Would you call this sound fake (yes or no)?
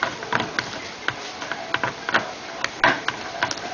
no